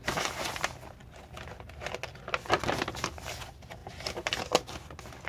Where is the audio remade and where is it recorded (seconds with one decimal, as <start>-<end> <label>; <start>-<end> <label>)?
0.0-5.3 recorded